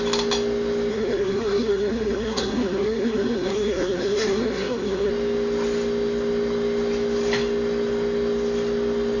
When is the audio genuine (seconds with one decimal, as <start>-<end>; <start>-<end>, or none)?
0.0-0.9; 5.1-9.2